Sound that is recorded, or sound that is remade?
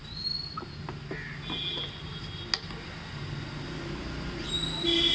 recorded